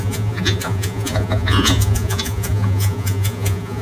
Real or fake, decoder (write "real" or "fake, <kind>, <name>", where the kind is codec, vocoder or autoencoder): fake, vocoder, Vocos